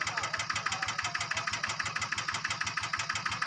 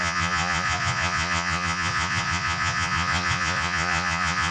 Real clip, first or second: first